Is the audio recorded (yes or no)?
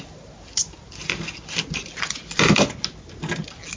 yes